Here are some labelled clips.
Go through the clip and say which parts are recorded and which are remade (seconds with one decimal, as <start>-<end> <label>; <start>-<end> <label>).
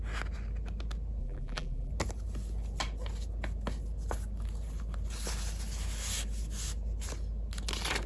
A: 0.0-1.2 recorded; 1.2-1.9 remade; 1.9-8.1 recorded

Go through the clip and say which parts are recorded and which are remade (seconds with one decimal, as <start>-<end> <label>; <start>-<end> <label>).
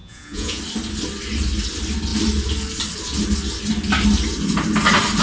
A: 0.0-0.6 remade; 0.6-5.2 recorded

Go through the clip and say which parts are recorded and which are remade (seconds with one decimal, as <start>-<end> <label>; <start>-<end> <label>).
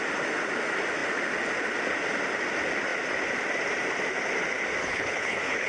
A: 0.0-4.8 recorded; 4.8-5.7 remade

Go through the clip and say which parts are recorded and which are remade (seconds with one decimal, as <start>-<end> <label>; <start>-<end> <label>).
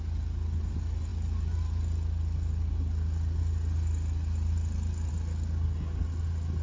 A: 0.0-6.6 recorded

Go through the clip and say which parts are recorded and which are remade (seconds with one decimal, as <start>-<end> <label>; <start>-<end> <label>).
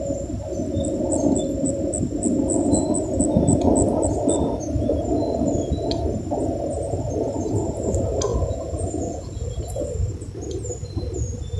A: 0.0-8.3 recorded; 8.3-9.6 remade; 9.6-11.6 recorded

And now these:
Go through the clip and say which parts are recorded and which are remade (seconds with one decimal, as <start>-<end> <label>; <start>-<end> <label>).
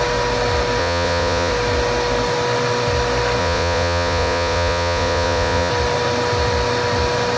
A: 0.0-0.8 recorded; 0.8-1.5 remade; 1.5-3.4 recorded; 3.4-5.7 remade; 5.7-7.4 recorded